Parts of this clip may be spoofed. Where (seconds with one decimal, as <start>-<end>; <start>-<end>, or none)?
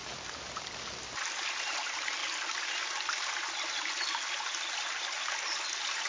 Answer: none